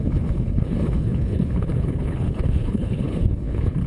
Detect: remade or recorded remade